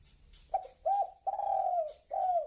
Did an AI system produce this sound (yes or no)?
no